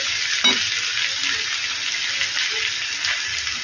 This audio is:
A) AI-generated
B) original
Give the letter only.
B